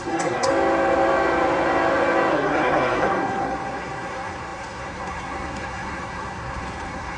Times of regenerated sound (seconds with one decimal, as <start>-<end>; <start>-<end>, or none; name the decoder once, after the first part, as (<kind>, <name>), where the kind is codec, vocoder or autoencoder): 0.0-0.5 (codec, SNAC); 2.3-7.2

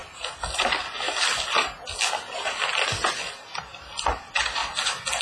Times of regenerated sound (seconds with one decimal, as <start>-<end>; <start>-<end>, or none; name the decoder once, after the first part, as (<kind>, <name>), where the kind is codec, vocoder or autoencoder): none

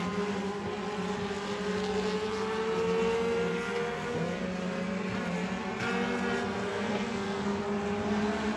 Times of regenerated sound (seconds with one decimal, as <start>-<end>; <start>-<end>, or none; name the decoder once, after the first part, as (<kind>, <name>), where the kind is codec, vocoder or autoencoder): 3.5-4.4 (codec, SNAC); 6.7-7.6

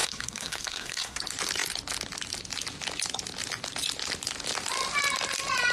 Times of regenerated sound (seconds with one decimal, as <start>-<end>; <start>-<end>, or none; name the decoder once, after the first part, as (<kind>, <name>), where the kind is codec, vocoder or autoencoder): 0.0-1.2 (codec, SNAC)

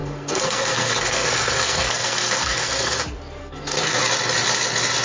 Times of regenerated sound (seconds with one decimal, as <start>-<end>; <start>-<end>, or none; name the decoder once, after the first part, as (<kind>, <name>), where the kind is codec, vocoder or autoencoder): 0.0-3.0 (codec, SNAC); 3.4-4.0

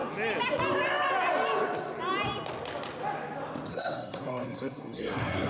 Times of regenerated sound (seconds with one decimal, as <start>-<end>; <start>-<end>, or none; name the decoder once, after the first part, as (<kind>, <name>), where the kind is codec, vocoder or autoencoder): 3.7-5.5 (codec, SNAC)

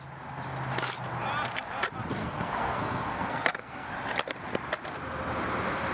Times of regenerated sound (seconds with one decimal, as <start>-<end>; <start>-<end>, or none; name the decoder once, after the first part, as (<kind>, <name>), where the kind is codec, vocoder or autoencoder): 2.2-3.9 (codec, SNAC)

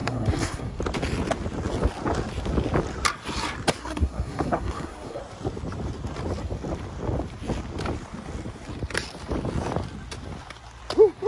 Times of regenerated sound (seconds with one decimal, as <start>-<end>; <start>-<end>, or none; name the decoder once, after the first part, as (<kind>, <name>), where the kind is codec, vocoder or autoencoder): 0.0-0.8 (codec, SNAC); 3.8-5.2